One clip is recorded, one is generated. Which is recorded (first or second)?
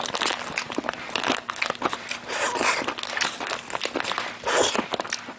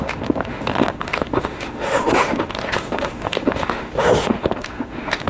first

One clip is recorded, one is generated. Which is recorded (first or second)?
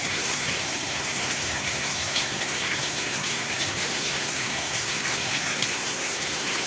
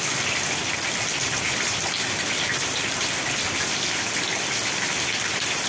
second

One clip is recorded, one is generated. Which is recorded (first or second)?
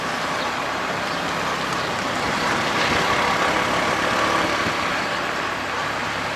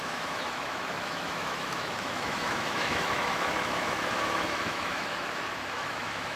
first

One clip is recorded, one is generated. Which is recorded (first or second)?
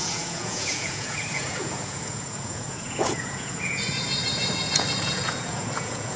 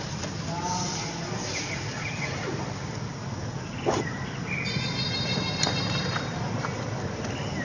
second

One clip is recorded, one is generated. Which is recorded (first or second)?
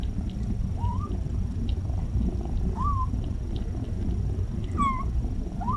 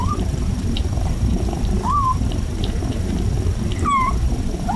first